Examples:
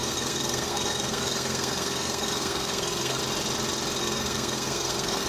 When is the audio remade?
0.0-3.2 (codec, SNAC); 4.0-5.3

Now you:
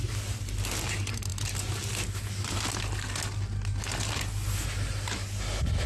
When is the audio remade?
none

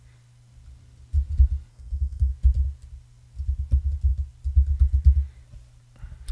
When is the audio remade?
1.7-2.3 (codec, SNAC)

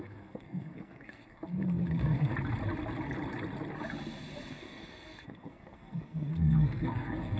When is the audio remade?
0.0-2.3 (codec, SNAC); 4.5-7.4

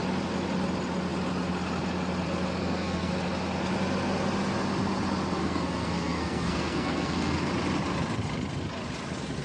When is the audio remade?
2.6-3.1 (codec, SNAC); 5.4-7.5

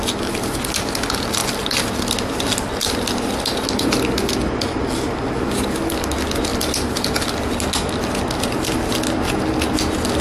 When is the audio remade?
none